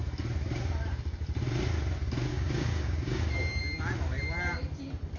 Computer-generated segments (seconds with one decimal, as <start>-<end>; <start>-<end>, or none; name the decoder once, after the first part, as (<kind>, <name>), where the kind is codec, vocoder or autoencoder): 2.3-3.6 (codec, DAC)